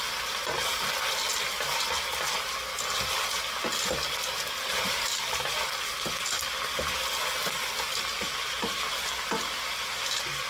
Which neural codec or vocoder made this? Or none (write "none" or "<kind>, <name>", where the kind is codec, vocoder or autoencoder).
none